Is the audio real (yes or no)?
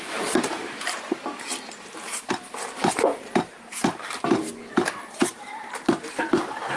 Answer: no